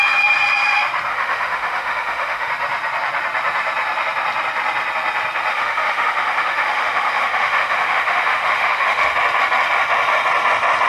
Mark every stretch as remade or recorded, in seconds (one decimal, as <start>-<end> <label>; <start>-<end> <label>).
0.0-1.1 recorded; 1.1-2.5 remade; 2.5-5.5 recorded; 5.5-9.0 remade; 9.0-10.9 recorded